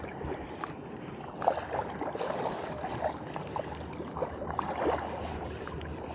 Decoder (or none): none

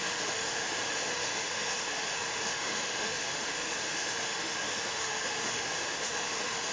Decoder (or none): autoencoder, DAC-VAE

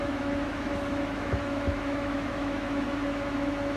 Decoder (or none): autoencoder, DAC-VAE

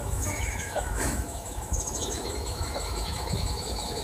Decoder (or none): autoencoder, DAC-VAE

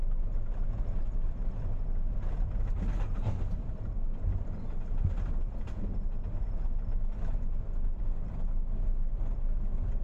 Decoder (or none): none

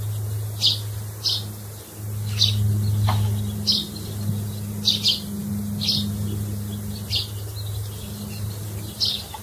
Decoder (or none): none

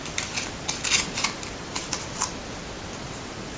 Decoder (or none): none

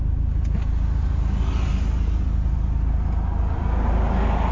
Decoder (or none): none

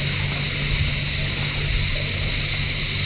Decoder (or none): none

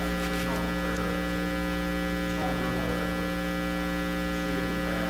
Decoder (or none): none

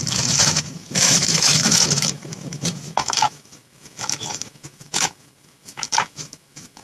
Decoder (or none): autoencoder, DAC-VAE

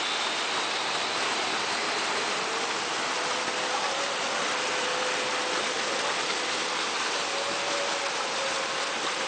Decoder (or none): none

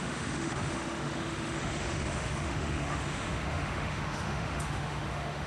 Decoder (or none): autoencoder, DAC-VAE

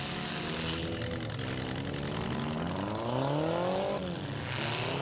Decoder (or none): none